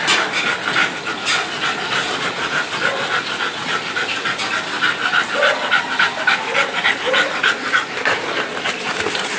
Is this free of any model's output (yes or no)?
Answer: yes